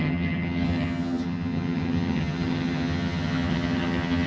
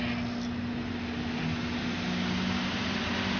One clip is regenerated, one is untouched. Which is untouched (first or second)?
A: second